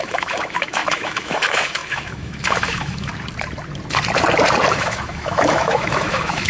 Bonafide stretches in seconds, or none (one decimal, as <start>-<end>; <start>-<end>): 3.1-4.7